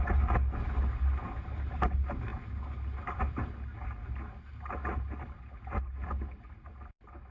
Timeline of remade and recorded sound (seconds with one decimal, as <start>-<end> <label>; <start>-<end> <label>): 0.0-7.3 recorded